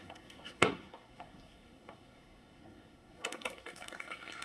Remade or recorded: remade